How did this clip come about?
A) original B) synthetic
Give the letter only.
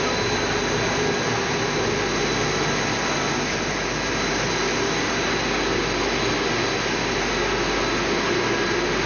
A